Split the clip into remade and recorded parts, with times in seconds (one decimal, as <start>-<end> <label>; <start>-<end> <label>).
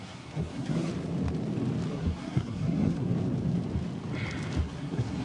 0.0-0.9 remade; 0.9-1.9 recorded; 1.9-3.1 remade; 3.1-4.6 recorded; 4.6-5.2 remade